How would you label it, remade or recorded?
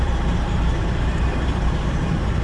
remade